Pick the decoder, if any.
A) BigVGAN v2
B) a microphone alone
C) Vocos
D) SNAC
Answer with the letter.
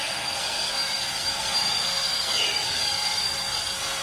D